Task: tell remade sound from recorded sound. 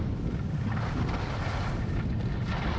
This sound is recorded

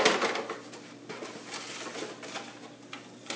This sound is recorded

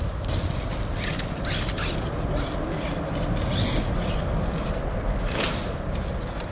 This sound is recorded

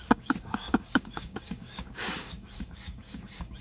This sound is remade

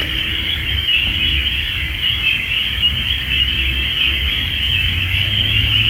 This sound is remade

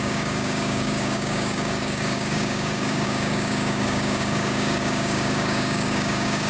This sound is remade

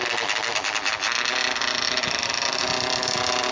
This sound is recorded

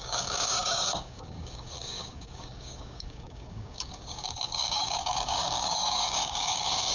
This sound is remade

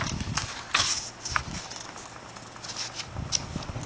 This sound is recorded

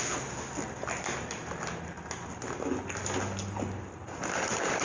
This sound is recorded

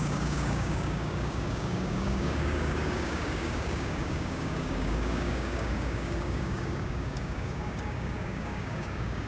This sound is remade